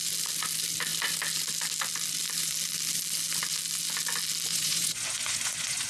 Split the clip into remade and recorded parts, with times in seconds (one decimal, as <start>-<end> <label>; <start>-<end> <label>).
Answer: 0.0-4.5 recorded; 4.5-5.9 remade